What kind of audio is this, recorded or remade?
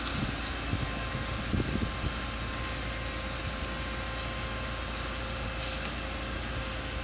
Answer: recorded